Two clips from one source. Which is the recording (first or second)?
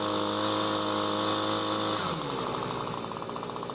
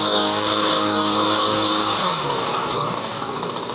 first